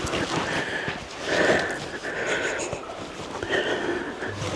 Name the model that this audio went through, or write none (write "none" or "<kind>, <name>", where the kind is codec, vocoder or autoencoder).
none